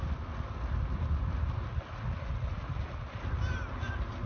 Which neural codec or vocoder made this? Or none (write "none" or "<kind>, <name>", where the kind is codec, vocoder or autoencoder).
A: none